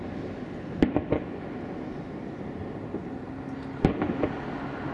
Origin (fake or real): real